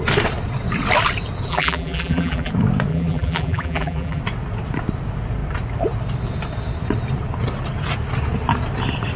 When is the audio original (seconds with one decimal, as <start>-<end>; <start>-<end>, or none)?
0.0-1.5; 2.5-2.9; 4.2-9.2